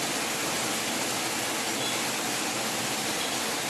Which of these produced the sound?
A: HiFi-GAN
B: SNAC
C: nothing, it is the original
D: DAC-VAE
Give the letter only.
C